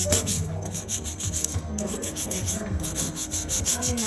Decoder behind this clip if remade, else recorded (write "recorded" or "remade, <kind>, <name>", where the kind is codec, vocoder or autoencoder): remade, codec, SNAC